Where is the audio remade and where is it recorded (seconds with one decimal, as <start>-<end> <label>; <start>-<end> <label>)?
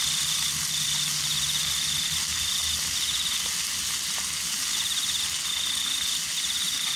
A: 0.0-7.0 recorded